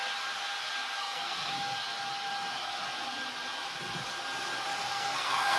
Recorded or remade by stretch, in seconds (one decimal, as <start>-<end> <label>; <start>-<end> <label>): 0.0-1.0 recorded; 1.0-1.5 remade; 1.5-4.9 recorded; 4.9-5.6 remade